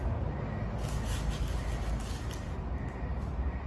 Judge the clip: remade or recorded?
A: recorded